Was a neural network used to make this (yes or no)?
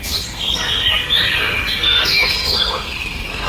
yes